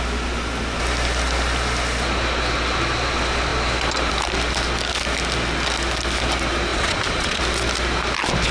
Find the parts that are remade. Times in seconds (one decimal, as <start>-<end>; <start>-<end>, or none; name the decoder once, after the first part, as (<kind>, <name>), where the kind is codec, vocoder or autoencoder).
6.7-7.4 (vocoder, Vocos)